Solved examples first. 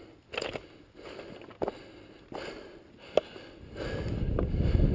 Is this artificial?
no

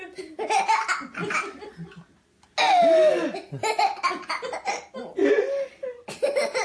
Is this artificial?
no